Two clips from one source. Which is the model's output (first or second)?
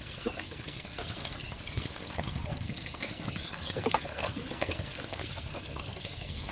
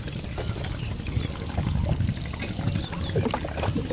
first